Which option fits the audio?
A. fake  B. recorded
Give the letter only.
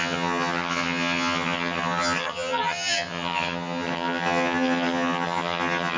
A